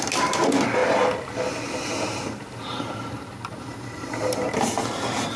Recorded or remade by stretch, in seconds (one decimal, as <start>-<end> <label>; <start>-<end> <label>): 0.0-5.4 recorded